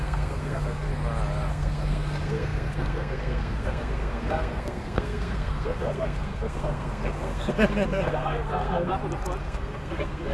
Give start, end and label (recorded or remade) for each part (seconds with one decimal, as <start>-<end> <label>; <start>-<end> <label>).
0.0-0.9 remade; 0.9-1.5 recorded; 1.5-8.9 remade; 8.9-9.4 recorded; 9.4-10.3 remade